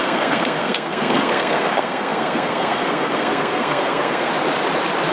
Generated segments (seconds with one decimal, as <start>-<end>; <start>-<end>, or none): 0.0-4.3